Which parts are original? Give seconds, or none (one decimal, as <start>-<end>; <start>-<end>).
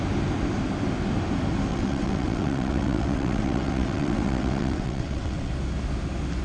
0.0-1.7; 5.5-6.4